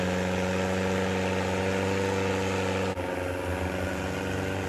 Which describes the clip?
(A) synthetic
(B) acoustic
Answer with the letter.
B